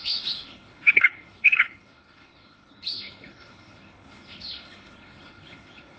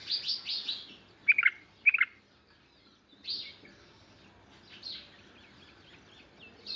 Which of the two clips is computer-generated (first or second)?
first